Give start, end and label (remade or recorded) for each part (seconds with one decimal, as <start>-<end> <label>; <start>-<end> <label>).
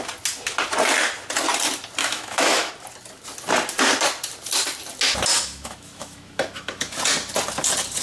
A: 0.0-2.0 recorded; 2.0-2.7 remade; 2.7-5.3 recorded; 5.3-7.0 remade; 7.0-8.0 recorded